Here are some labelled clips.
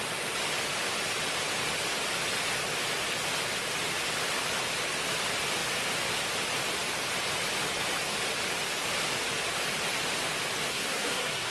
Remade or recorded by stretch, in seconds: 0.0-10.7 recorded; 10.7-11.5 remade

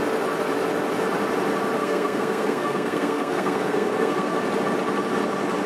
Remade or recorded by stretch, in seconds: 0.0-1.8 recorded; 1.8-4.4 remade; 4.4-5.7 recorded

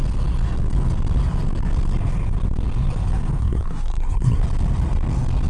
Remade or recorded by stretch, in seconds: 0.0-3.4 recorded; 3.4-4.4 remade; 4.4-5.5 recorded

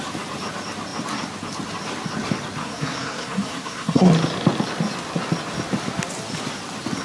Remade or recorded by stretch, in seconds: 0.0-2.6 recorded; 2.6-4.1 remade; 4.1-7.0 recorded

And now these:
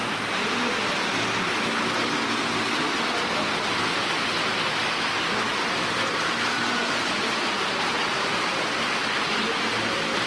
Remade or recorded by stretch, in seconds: 0.0-10.3 recorded

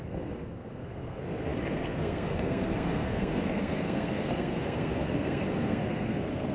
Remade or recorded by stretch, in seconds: 0.0-6.5 remade

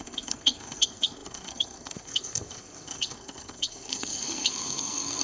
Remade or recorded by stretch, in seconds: 0.0-5.2 remade

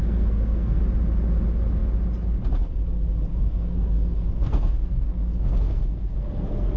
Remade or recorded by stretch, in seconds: 0.0-0.8 remade; 0.8-3.3 recorded; 3.3-6.8 remade